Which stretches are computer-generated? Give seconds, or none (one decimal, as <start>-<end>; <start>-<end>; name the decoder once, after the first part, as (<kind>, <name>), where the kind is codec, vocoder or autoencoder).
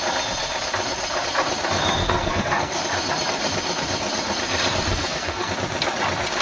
2.0-2.8 (codec, SNAC); 4.9-5.5